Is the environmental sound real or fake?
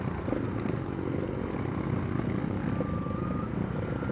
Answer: real